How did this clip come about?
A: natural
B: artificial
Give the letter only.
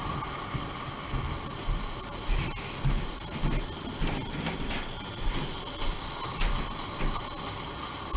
A